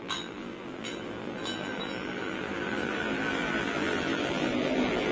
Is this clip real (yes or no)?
no